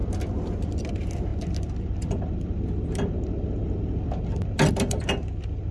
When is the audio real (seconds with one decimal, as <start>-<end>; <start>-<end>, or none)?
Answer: 0.0-5.7